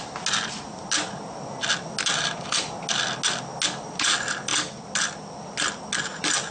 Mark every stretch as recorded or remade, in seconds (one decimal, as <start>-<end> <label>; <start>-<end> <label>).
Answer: 0.0-6.5 recorded